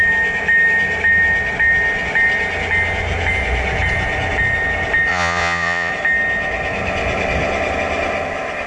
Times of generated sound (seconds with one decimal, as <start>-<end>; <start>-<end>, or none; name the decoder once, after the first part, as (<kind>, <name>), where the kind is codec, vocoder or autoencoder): 5.1-5.9 (vocoder, Vocos)